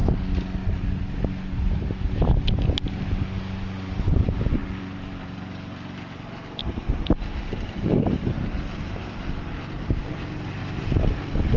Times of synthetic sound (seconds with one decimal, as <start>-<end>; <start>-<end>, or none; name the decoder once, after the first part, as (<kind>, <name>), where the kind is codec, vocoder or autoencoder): 3.9-11.6 (vocoder, BigVGAN v2)